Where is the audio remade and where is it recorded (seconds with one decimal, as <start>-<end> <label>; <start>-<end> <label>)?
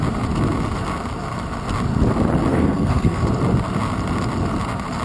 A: 0.0-2.5 recorded; 2.5-3.2 remade; 3.2-5.0 recorded